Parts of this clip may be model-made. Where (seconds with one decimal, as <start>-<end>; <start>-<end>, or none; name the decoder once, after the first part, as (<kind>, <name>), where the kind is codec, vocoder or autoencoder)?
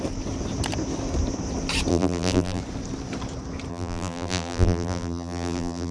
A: 1.9-2.6 (vocoder, BigVGAN v2); 3.7-5.9